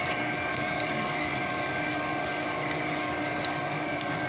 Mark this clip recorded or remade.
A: remade